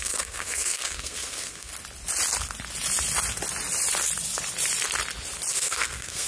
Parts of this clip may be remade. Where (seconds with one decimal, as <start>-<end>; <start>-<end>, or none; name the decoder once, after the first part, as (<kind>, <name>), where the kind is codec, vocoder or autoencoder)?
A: 0.0-1.7 (codec, SNAC); 5.5-6.3